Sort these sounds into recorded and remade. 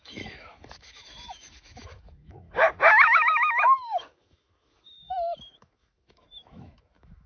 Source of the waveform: remade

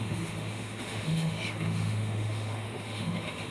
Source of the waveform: remade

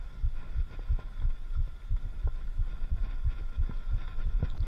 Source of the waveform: recorded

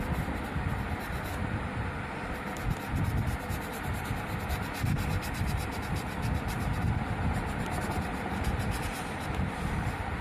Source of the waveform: recorded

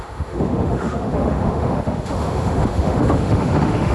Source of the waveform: remade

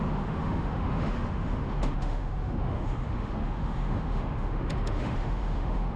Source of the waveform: remade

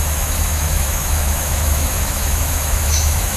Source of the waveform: remade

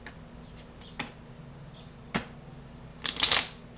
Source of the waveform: recorded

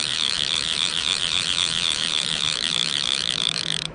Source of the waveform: remade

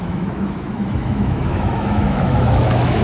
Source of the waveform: remade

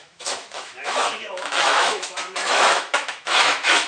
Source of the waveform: remade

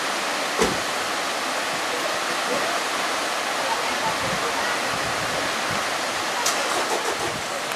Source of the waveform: recorded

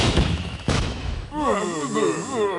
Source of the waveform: remade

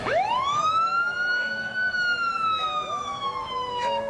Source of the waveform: remade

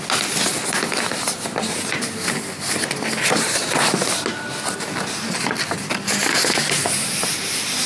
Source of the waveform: recorded